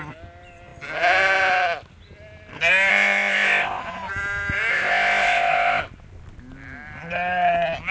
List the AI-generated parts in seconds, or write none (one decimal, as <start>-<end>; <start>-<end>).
2.9-3.8; 4.7-5.8

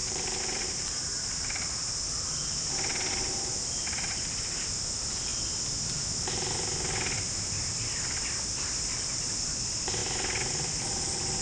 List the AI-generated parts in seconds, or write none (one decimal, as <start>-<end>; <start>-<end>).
0.0-2.1

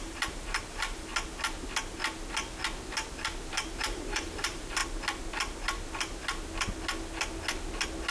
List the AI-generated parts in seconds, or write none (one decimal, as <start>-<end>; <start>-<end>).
0.0-1.1; 3.8-4.8

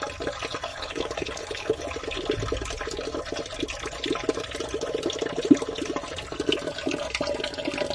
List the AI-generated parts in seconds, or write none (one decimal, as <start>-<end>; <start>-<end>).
0.7-1.8

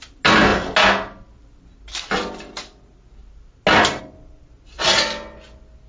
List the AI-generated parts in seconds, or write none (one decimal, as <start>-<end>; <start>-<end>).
none

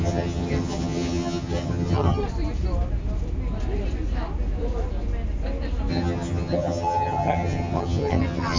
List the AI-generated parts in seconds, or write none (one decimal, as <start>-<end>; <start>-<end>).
0.0-2.2; 5.9-8.6

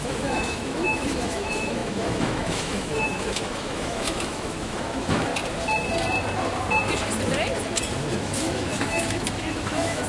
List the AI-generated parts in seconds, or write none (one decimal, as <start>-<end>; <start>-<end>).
0.0-5.3; 8.1-10.1

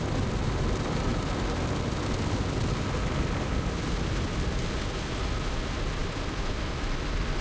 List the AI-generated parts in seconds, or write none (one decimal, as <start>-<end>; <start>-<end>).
none